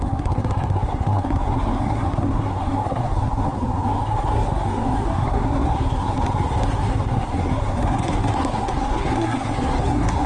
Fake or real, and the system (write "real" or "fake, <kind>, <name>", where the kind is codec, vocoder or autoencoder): fake, codec, SNAC